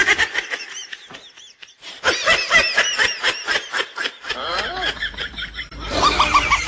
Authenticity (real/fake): fake